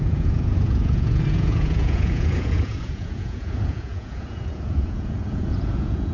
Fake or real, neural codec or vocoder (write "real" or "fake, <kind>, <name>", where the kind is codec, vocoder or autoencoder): fake, vocoder, Vocos